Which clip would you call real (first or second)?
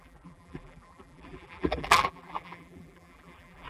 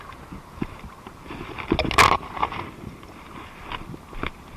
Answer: second